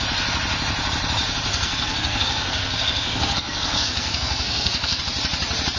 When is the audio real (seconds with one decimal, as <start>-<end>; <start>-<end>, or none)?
0.0-1.5; 5.0-5.8